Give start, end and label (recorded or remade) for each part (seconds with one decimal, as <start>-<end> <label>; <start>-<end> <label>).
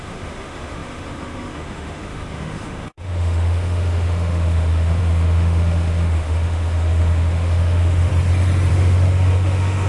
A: 0.0-8.1 remade; 8.1-8.7 recorded; 8.7-9.9 remade